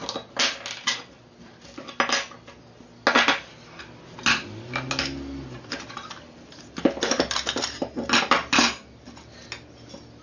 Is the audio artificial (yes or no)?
no